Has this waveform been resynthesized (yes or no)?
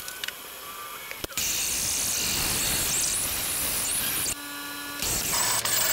no